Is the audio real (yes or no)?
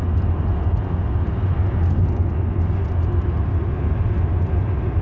yes